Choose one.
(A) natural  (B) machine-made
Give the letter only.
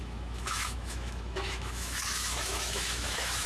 B